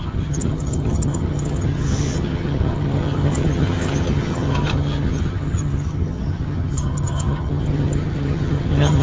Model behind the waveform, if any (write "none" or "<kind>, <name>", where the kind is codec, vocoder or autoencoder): vocoder, HiFi-GAN